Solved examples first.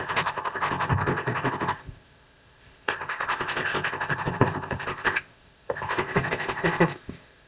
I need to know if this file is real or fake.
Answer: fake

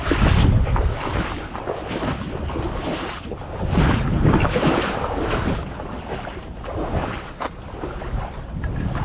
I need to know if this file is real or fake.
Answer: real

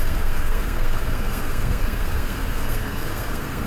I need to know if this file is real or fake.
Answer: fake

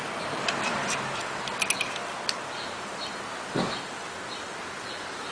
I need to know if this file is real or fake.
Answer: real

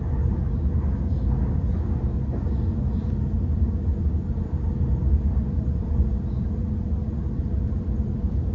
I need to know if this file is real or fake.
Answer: real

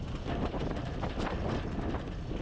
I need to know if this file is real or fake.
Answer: real